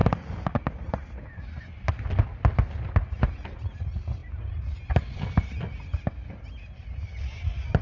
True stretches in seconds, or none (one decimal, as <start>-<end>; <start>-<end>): 0.0-7.8